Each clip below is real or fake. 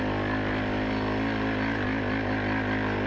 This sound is real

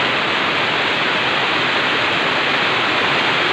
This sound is real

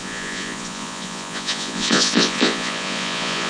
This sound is fake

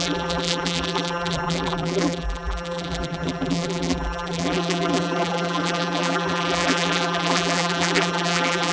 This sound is fake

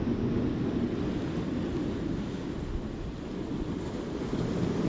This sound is real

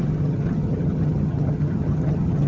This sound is fake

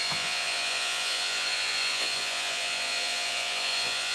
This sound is fake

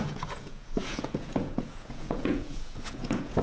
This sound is fake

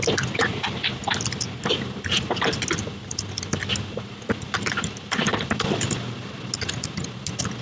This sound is real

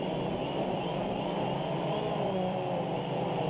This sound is fake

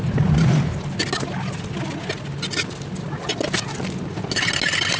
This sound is real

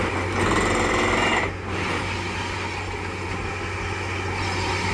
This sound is real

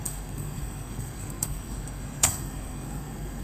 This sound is fake